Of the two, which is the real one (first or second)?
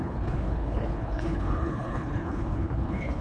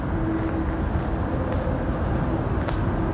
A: second